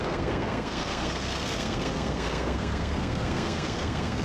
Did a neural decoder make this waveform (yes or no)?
yes